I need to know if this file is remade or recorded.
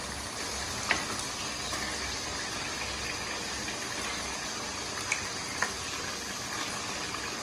recorded